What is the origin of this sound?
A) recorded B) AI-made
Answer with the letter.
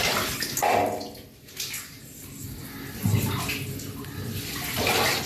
A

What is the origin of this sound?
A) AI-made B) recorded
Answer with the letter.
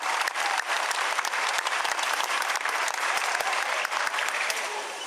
A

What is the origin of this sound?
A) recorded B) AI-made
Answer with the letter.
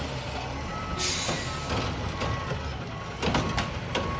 A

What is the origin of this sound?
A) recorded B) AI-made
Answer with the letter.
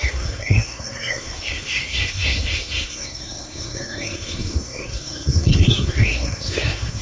B